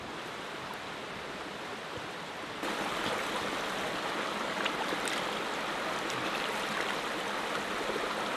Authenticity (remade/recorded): recorded